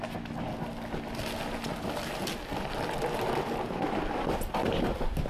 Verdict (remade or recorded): recorded